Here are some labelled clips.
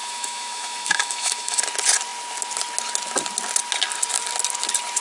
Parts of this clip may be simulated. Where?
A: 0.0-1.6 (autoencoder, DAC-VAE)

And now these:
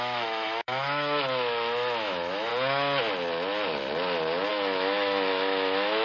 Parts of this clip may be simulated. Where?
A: 0.0-2.5 (autoencoder, DAC-VAE); 4.5-6.0

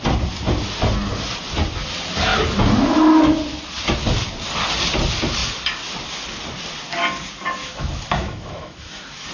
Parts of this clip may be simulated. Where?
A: 7.6-9.3 (autoencoder, DAC-VAE)

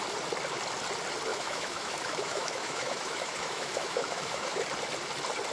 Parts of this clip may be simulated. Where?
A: 1.3-4.6 (autoencoder, DAC-VAE)

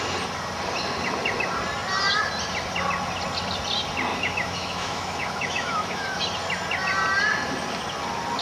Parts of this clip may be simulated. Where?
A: 4.1-6.2 (autoencoder, DAC-VAE)

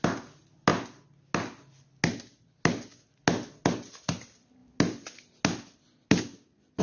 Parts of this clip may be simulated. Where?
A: none

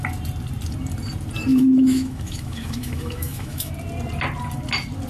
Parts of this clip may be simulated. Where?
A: 1.5-3.7 (autoencoder, DAC-VAE)

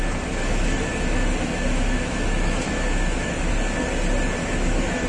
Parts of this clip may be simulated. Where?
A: 0.4-3.5 (autoencoder, DAC-VAE); 4.4-5.1